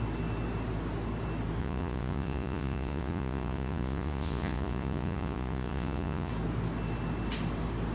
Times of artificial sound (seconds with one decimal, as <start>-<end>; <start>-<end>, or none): 1.6-6.3